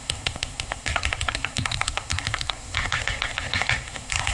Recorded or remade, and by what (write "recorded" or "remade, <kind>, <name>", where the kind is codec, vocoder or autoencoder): remade, codec, SNAC